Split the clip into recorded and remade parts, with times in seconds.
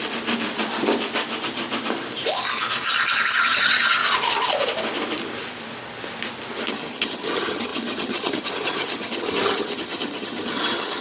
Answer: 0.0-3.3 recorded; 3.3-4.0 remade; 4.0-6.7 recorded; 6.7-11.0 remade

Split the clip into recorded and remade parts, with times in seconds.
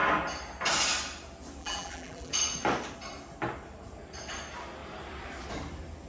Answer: 0.0-1.6 recorded; 1.6-2.3 remade; 2.3-6.1 recorded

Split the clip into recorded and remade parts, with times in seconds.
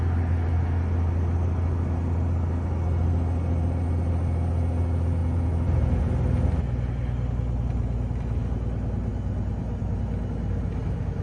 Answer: 0.0-5.2 recorded; 5.2-6.1 remade; 6.1-11.2 recorded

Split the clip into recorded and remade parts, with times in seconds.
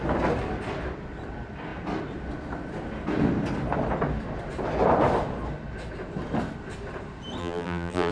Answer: 0.0-7.4 recorded; 7.4-8.1 remade